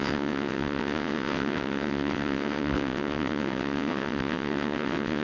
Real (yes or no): no